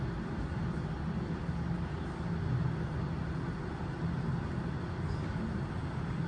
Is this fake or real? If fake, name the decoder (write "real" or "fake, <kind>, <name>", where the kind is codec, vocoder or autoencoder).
real